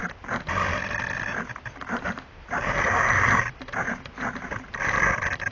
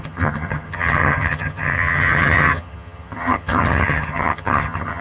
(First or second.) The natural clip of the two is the first